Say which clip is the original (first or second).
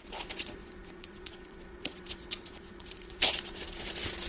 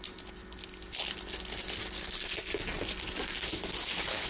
second